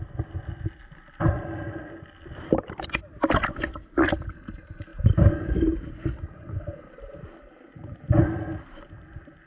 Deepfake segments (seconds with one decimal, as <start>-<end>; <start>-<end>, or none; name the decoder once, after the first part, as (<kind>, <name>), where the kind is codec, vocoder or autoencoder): none

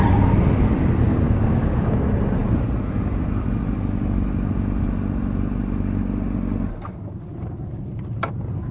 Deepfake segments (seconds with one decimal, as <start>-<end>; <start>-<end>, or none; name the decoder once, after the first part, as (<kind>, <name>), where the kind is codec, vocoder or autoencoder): 1.1-1.9 (codec, DAC)

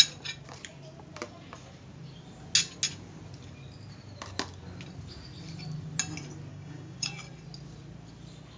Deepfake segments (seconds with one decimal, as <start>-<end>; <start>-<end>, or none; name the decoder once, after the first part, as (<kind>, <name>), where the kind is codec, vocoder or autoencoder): 6.5-7.1 (codec, DAC)

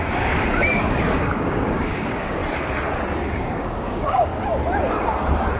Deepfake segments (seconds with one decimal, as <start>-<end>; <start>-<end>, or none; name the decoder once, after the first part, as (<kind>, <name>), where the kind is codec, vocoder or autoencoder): 0.0-2.4 (codec, DAC); 3.5-4.3